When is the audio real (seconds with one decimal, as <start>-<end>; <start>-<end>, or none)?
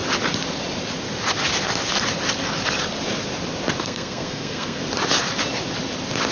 0.0-3.8; 4.8-6.3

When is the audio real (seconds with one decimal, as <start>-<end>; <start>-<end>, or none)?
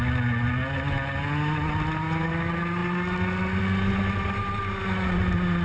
0.0-5.6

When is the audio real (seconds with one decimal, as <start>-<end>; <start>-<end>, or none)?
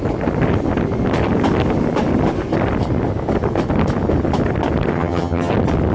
0.0-4.9; 5.5-5.9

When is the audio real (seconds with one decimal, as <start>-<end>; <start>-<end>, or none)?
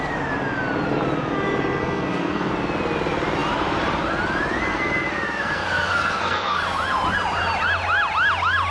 0.0-1.8; 2.5-4.7; 6.6-8.7